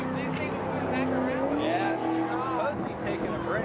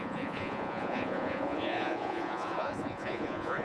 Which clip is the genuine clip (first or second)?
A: first